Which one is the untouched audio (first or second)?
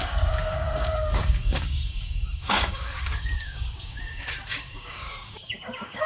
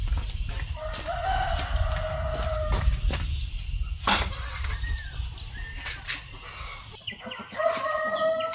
second